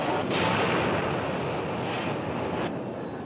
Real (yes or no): yes